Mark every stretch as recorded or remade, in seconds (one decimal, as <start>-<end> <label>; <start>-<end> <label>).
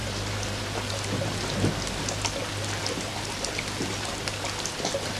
0.0-5.2 recorded